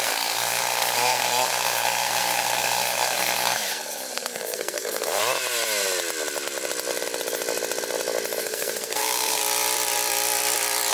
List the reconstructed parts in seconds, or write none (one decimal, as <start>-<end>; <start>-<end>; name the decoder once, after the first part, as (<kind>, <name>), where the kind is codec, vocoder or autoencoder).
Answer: 0.0-5.2 (codec, SNAC); 8.4-9.4